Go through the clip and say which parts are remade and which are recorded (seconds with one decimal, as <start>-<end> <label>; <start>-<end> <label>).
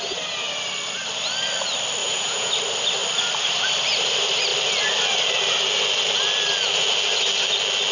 0.0-2.0 recorded; 2.0-2.5 remade; 2.5-7.9 recorded